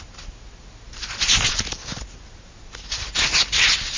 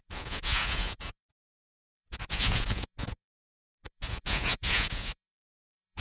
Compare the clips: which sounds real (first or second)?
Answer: first